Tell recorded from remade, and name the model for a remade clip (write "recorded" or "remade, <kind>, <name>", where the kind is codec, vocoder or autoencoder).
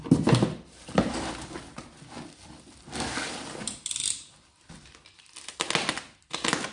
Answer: recorded